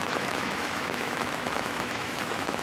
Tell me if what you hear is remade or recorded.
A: remade